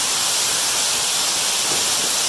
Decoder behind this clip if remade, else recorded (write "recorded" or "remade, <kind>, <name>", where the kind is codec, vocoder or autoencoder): recorded